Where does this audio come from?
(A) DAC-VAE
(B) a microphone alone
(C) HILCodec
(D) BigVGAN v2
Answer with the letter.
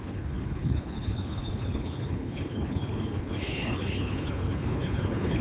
C